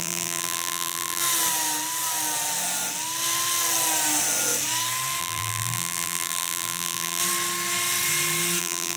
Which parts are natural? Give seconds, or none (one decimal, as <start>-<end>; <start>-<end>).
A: 1.2-5.2; 7.2-8.6